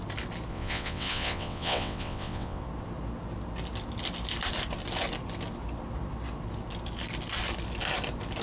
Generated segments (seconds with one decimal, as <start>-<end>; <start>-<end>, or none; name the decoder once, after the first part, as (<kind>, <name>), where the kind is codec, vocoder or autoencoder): 0.5-2.6 (vocoder, WaveNeXt)